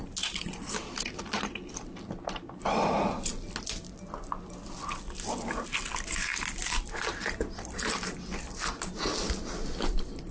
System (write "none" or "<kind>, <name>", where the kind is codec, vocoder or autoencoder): none